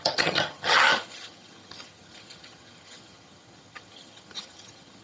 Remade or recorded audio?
remade